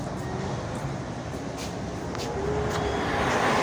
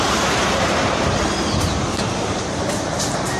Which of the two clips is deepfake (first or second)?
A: second